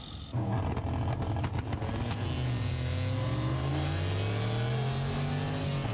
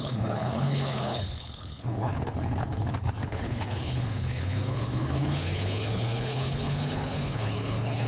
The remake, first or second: second